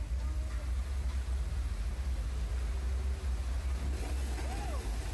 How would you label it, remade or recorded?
recorded